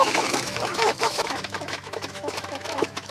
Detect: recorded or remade remade